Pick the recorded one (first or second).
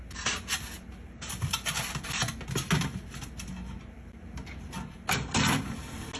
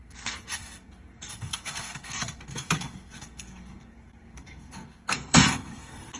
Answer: first